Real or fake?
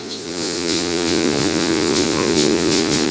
fake